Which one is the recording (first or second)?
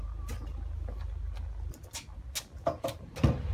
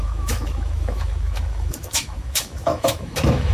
first